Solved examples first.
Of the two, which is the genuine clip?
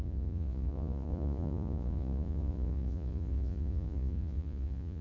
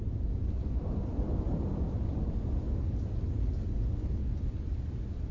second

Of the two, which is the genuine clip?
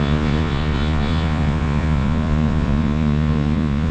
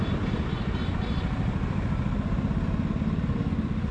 second